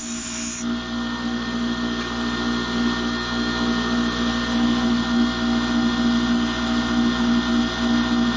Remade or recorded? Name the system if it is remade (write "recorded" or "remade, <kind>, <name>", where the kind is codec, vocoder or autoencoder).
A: recorded